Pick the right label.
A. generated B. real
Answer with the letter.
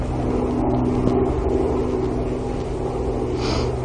B